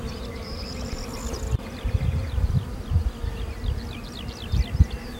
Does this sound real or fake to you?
real